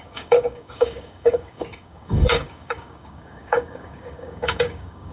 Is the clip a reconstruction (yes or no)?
yes